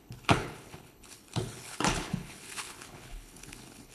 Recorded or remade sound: remade